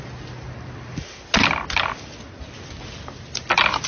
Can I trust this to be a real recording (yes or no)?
yes